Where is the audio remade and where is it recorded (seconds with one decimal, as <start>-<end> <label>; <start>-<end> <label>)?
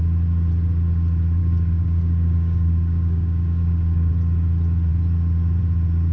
0.0-1.4 recorded; 1.4-4.1 remade; 4.1-6.1 recorded